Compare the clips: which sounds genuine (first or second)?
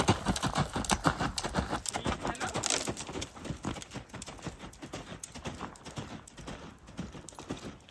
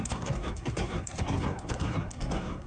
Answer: first